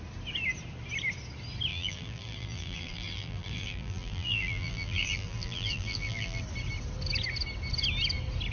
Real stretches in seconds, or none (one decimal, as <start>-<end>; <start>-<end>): 0.0-1.7; 6.4-8.5